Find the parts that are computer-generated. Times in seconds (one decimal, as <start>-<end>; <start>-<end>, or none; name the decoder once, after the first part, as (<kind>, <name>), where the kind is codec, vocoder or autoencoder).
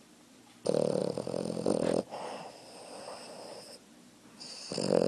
none